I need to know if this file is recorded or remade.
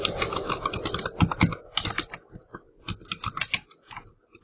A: recorded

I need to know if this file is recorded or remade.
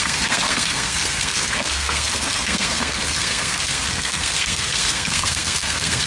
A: remade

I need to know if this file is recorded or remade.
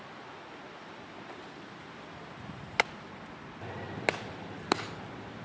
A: recorded